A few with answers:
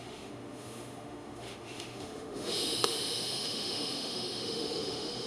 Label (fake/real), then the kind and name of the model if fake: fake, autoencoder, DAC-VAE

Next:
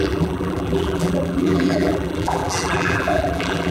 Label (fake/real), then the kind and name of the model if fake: fake, vocoder, BigVGAN v2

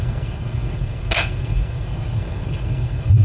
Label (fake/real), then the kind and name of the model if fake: fake, codec, SNAC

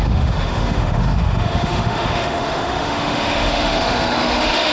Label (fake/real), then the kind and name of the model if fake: fake, autoencoder, DAC-VAE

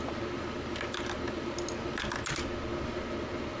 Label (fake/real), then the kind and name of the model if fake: real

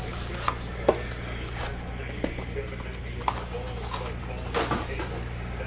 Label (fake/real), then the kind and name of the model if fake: real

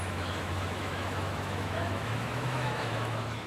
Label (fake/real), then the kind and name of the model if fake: fake, autoencoder, DAC-VAE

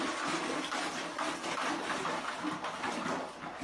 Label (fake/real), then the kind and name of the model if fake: real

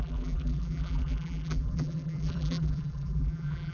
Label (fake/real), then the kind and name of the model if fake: fake, vocoder, BigVGAN v2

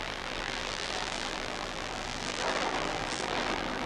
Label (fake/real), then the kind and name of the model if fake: fake, vocoder, BigVGAN v2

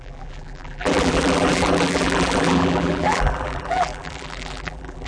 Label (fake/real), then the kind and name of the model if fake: fake, vocoder, BigVGAN v2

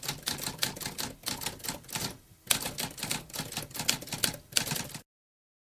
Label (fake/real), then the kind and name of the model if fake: real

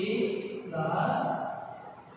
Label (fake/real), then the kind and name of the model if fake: fake, vocoder, BigVGAN v2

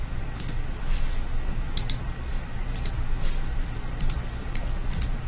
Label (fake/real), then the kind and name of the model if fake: real